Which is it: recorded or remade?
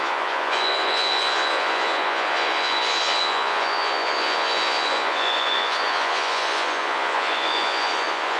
remade